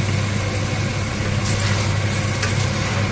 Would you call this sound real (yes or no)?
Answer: yes